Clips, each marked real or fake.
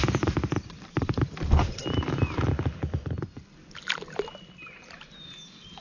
real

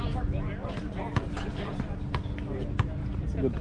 real